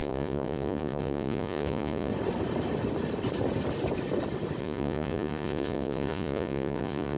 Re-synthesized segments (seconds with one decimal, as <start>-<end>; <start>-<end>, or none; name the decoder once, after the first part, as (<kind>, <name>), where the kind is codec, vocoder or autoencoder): 0.0-2.1 (vocoder, Vocos); 4.6-7.2